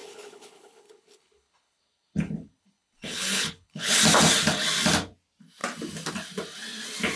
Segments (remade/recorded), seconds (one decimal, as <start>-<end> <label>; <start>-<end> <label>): 0.0-4.0 remade; 4.0-7.2 recorded